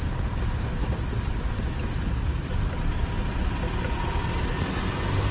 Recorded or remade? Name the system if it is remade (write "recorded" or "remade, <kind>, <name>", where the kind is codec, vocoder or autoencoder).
recorded